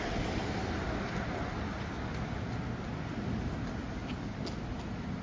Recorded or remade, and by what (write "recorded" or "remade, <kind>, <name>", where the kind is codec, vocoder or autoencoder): recorded